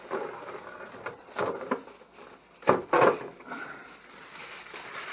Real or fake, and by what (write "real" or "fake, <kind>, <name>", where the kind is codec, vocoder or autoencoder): real